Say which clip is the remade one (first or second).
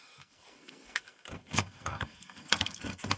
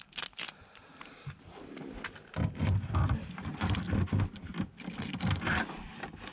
first